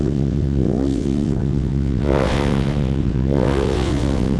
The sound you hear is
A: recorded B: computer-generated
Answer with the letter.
B